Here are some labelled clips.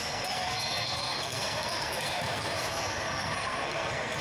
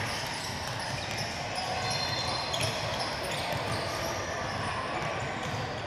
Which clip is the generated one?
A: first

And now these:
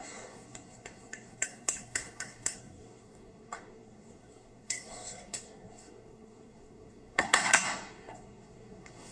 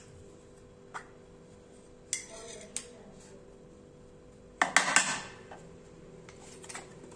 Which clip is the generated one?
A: first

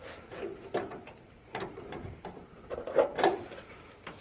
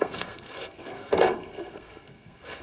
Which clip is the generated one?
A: second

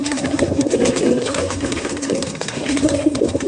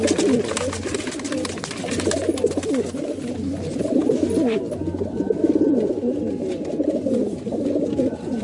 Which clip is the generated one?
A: first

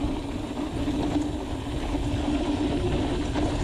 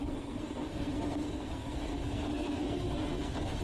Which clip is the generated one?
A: second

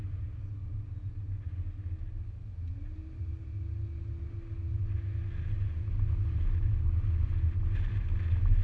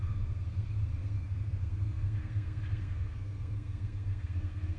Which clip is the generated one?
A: second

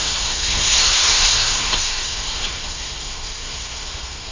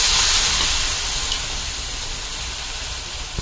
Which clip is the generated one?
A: first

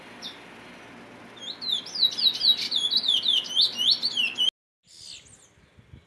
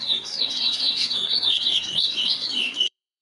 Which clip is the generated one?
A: second